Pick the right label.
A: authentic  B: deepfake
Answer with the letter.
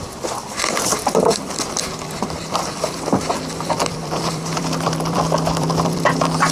B